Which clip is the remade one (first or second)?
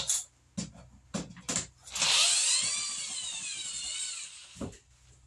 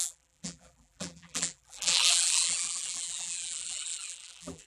second